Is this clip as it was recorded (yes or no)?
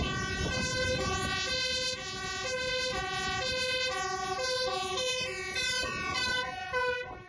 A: yes